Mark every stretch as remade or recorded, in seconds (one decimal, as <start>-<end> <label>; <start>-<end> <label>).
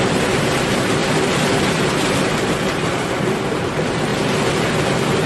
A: 0.0-5.3 recorded